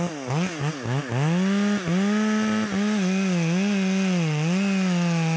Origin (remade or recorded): recorded